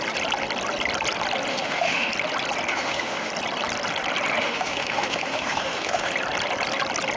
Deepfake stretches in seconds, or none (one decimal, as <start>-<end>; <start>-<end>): 1.5-2.1; 2.7-3.3; 4.4-6.1